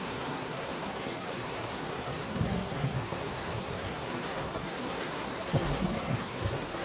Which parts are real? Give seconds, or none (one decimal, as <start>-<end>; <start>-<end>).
none